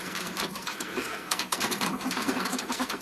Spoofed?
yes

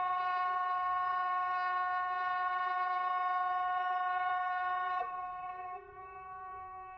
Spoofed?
yes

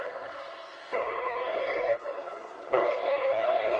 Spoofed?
yes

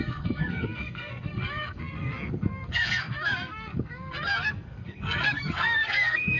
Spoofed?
yes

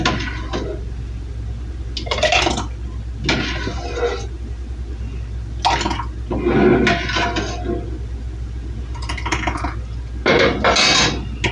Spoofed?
no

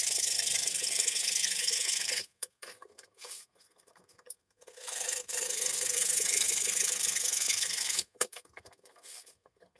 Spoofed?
yes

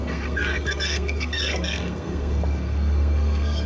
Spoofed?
yes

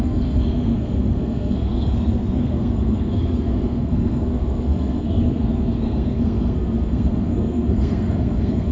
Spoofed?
yes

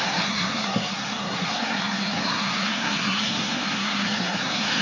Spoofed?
yes